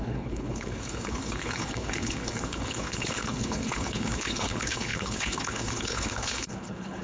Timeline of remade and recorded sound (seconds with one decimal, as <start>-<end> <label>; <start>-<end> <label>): 0.0-7.0 remade